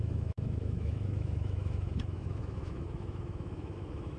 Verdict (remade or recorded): remade